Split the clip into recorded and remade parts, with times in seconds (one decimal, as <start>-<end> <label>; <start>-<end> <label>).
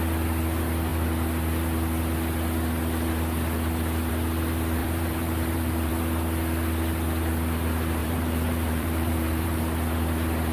0.0-4.8 recorded; 4.8-5.9 remade; 5.9-8.0 recorded; 8.0-9.6 remade; 9.6-10.5 recorded